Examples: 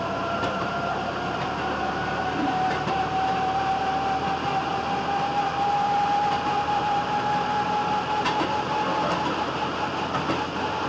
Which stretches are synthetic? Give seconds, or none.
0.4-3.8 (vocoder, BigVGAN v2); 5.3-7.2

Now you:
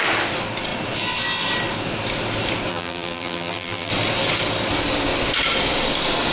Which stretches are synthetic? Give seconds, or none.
2.7-3.9 (vocoder, BigVGAN v2)

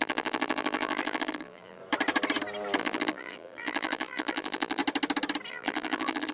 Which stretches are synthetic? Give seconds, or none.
0.0-1.8 (vocoder, BigVGAN v2); 2.8-4.8; 5.5-6.3